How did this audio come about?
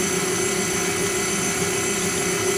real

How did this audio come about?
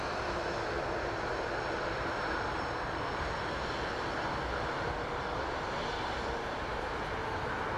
real